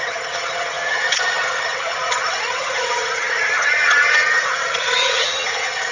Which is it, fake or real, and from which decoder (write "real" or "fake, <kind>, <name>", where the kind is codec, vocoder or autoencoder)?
fake, vocoder, HiFi-GAN